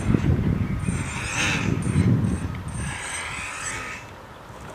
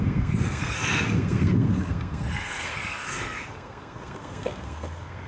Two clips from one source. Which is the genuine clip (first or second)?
first